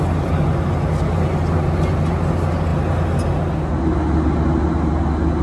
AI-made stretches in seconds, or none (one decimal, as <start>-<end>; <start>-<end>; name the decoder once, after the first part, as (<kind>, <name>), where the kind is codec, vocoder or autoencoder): none